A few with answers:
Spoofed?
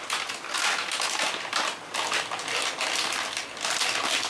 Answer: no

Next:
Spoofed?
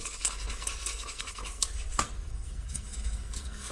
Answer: yes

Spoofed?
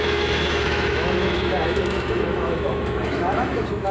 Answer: yes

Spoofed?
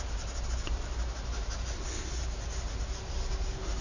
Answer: no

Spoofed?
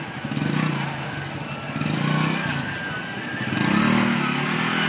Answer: no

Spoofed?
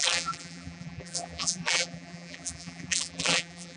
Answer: yes